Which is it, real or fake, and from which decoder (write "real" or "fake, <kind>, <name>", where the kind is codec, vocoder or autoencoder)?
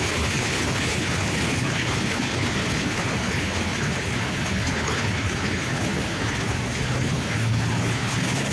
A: fake, codec, HILCodec